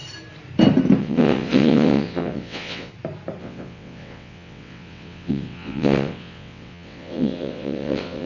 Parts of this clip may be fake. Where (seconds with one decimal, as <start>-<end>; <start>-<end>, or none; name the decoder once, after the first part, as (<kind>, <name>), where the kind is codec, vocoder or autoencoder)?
1.0-2.9 (vocoder, WaveNeXt); 3.4-8.3